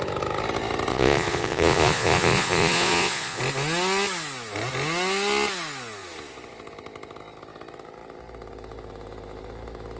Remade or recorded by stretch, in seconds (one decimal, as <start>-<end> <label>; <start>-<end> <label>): 0.0-0.9 recorded; 0.9-3.4 remade; 3.4-10.0 recorded